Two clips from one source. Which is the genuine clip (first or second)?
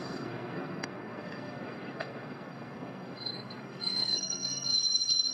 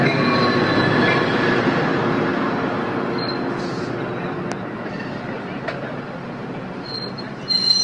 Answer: second